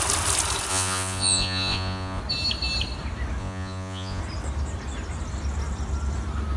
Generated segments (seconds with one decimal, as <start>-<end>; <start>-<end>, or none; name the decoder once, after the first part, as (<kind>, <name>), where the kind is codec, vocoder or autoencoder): 0.7-2.2 (vocoder, Vocos); 3.4-4.2